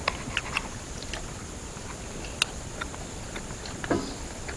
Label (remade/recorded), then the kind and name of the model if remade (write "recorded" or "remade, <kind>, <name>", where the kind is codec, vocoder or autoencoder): recorded